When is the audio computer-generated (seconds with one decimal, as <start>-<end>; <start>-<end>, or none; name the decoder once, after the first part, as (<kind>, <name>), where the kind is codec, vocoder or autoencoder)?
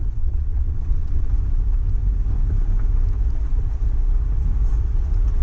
0.0-1.3 (vocoder, WaveNeXt)